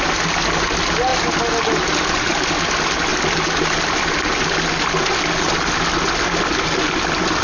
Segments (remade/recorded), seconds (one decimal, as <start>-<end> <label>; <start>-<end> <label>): 0.0-7.4 recorded